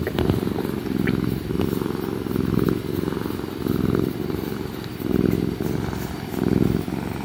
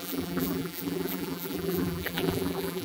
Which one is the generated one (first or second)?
second